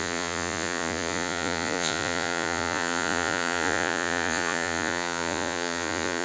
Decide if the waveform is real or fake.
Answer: fake